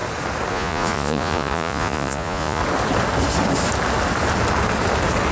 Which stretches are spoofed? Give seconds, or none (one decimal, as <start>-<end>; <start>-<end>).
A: 0.5-2.6